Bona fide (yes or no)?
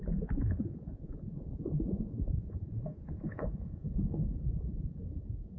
no